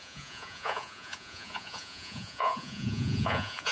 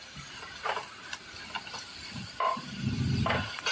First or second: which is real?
second